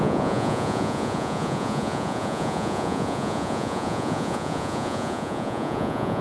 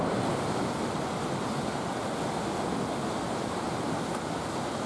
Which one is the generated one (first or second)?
first